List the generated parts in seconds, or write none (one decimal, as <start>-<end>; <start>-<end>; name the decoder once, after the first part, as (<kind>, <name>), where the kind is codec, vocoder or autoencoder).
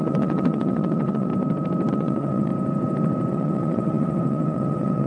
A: 0.0-1.3 (vocoder, WaveNeXt); 1.9-2.5; 3.3-5.1